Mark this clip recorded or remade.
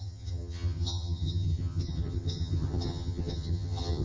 remade